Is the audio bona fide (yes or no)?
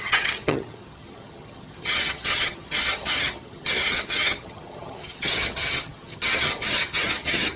no